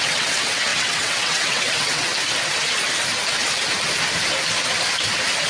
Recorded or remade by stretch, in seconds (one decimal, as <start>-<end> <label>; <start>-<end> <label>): 0.0-2.1 remade; 2.1-5.5 recorded